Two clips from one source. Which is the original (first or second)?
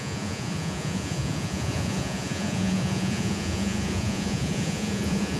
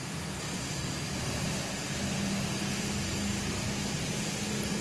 second